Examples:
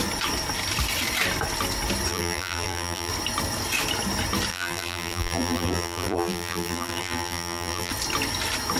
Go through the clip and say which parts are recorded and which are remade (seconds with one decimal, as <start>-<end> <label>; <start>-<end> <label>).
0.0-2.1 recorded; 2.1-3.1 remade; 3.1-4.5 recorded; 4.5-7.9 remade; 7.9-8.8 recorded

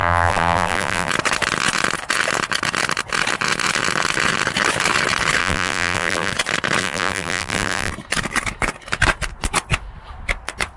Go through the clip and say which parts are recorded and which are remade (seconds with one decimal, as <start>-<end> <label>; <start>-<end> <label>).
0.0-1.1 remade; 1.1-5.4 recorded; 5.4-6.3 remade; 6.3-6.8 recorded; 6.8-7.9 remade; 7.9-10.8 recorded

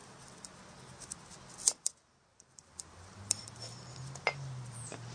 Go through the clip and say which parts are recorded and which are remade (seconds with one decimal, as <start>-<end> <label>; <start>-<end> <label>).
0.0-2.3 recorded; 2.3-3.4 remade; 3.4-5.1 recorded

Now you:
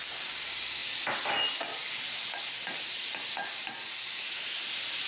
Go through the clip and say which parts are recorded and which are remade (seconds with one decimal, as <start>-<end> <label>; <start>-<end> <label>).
0.0-5.1 recorded